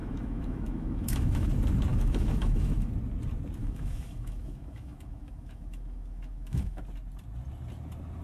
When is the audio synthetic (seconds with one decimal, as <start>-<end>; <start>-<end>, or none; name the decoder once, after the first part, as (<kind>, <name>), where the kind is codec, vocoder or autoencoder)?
0.0-1.5 (autoencoder, DAC-VAE); 1.9-2.9; 3.6-6.8